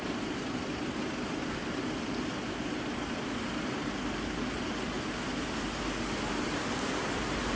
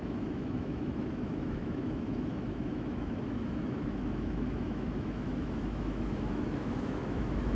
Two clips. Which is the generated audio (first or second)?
second